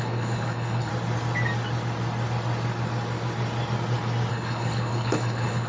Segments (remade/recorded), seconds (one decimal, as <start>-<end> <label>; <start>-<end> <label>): 0.0-0.9 remade; 0.9-4.3 recorded; 4.3-5.7 remade